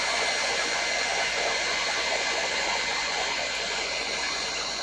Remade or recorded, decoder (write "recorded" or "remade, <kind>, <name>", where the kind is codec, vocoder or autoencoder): remade, vocoder, Vocos